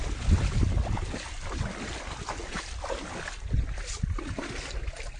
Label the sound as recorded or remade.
recorded